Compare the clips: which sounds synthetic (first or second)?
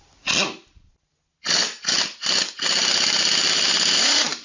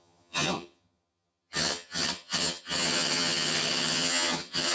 second